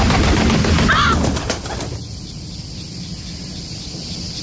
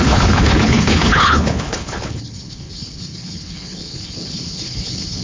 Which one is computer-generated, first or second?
second